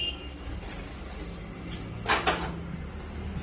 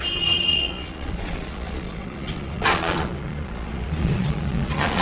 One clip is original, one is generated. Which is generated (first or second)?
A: second